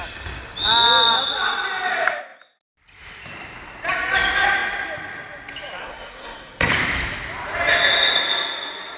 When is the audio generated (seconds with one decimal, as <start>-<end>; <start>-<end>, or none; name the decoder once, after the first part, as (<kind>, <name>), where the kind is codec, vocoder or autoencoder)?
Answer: 5.8-6.7 (codec, SNAC)